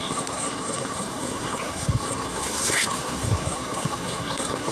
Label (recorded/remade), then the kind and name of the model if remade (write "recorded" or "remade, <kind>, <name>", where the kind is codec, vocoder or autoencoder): remade, codec, SNAC